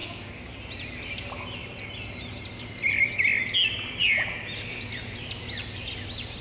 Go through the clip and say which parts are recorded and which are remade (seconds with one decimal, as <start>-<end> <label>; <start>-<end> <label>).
0.0-0.6 remade; 0.6-6.4 recorded